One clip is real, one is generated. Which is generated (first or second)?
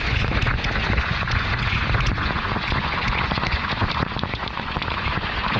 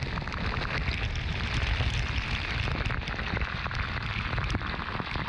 first